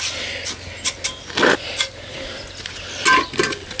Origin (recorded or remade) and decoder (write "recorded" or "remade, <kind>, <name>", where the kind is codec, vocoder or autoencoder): recorded